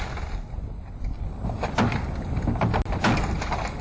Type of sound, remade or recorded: recorded